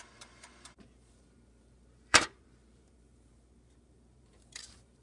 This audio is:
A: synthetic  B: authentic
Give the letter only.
A